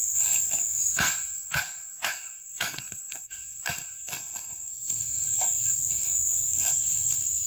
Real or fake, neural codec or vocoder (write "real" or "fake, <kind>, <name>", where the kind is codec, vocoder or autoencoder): fake, codec, SNAC